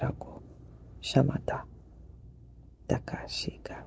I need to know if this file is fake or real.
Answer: fake